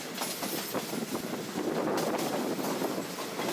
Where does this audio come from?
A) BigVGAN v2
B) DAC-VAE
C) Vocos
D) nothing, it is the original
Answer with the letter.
D